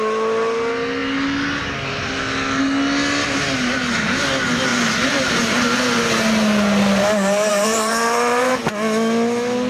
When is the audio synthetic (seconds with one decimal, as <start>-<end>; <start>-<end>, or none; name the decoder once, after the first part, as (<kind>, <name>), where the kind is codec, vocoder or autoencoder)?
4.7-5.6 (vocoder, BigVGAN v2); 7.5-8.5